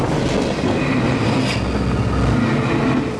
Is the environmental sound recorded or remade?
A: recorded